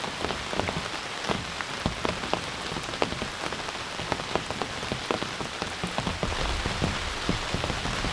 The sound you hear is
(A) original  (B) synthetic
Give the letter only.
A